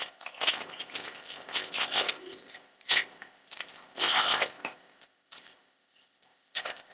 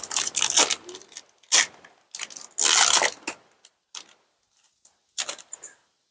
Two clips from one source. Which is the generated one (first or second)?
first